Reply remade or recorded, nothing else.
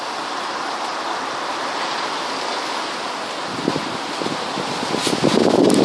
recorded